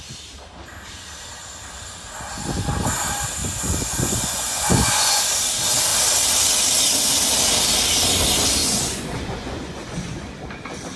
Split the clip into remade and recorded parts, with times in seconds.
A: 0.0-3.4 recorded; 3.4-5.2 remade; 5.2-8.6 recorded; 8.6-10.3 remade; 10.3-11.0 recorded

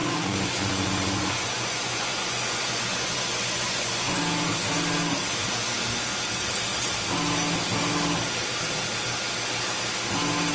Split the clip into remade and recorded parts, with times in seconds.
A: 0.0-4.2 remade; 4.2-10.5 recorded

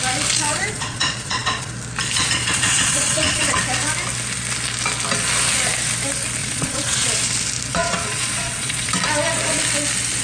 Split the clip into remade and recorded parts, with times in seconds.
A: 0.0-0.5 recorded; 0.5-1.7 remade; 1.7-2.2 recorded; 2.2-3.6 remade; 3.6-6.4 recorded; 6.4-7.1 remade; 7.1-7.7 recorded; 7.7-8.9 remade; 8.9-10.2 recorded

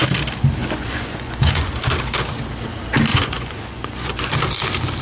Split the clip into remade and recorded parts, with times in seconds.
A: 0.0-0.6 recorded; 0.6-1.7 remade; 1.7-3.1 recorded; 3.1-4.3 remade; 4.3-5.0 recorded